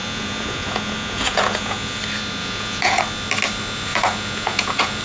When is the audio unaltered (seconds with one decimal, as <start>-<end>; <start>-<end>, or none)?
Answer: 2.0-2.4; 3.0-3.9